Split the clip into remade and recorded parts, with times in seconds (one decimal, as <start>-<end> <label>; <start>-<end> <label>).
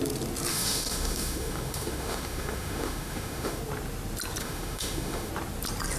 0.0-0.5 recorded; 0.5-3.6 remade; 3.6-4.4 recorded; 4.4-5.3 remade; 5.3-6.0 recorded